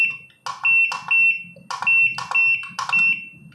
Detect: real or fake real